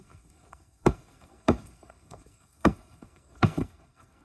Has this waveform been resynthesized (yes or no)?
yes